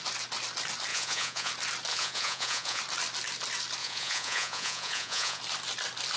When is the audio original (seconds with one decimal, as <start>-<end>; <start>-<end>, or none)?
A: 0.0-0.9; 1.5-1.9; 2.8-3.8; 5.4-6.2